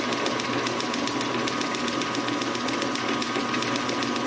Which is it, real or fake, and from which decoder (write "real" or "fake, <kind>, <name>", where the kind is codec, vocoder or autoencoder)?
real